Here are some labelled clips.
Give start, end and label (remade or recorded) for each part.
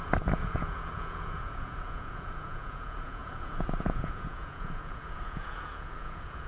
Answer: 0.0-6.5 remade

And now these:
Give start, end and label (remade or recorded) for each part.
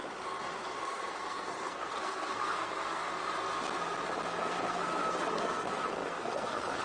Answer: 0.0-0.8 recorded; 0.8-3.0 remade; 3.0-4.4 recorded; 4.4-6.8 remade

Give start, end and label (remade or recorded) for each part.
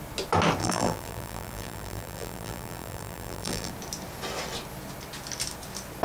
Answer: 0.0-0.6 recorded; 0.6-3.7 remade; 3.7-6.0 recorded